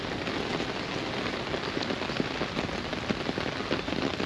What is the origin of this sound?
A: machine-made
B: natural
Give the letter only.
B